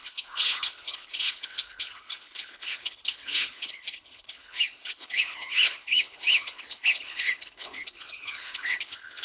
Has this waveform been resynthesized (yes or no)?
yes